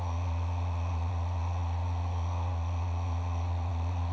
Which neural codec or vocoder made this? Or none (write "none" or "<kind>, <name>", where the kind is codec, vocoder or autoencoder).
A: vocoder, Vocos